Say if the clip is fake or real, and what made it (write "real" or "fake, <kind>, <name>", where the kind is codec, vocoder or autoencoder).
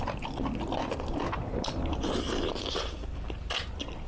real